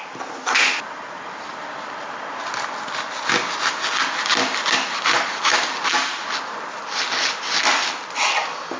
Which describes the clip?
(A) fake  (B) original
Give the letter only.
B